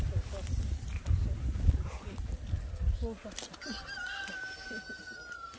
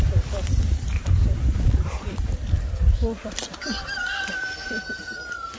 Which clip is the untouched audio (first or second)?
first